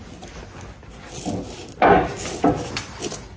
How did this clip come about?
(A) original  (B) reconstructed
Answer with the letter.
A